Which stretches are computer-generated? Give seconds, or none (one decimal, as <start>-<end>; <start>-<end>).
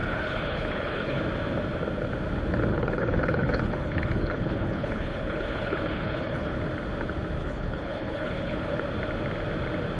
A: 0.0-1.2; 2.7-6.6; 7.4-8.8